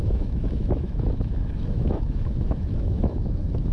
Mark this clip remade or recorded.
remade